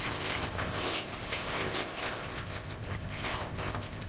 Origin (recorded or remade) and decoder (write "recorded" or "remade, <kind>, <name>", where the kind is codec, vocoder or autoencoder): remade, codec, ZipCodec